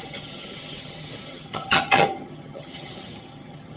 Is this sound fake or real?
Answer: fake